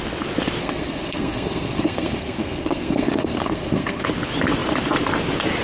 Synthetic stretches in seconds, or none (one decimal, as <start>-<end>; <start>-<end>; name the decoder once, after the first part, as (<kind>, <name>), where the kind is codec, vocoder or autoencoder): 0.6-4.0 (codec, SNAC)